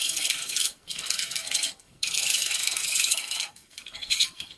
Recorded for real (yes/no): no